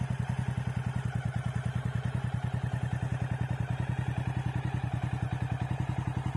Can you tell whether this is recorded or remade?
recorded